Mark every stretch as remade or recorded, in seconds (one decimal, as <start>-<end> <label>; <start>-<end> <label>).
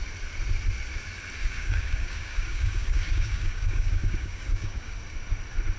0.0-1.4 recorded; 1.4-4.9 remade; 4.9-5.8 recorded